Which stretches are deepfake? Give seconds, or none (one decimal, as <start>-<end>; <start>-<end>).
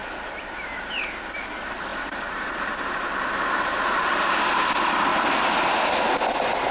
0.0-1.0; 1.9-4.3; 5.1-5.7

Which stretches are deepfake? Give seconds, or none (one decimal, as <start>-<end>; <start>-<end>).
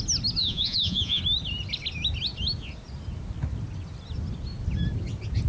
0.4-1.2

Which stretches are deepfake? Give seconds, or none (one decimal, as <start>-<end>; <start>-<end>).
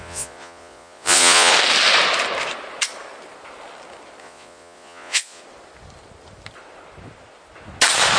0.0-1.5; 4.2-5.4